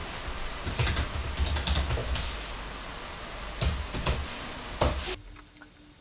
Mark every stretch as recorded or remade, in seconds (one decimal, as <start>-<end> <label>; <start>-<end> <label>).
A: 0.0-6.0 recorded